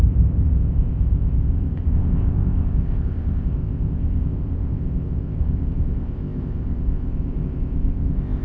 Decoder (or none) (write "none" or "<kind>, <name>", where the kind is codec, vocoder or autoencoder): codec, ZipCodec